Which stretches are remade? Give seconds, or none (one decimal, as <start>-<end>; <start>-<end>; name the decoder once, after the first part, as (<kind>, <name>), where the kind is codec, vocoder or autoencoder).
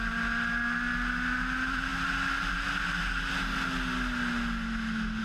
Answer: none